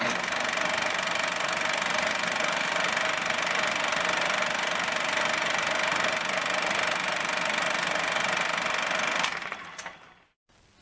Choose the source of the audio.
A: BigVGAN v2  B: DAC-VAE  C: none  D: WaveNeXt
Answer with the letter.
C